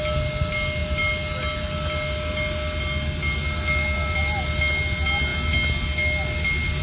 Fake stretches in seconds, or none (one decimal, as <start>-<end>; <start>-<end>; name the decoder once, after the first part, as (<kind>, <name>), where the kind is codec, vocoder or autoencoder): none